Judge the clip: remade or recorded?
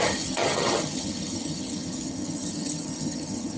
remade